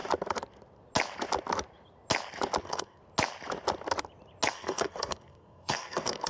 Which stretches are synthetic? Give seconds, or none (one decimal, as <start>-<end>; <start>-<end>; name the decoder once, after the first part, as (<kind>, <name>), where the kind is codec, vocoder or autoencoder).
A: 2.6-3.0 (codec, SNAC); 4.5-6.3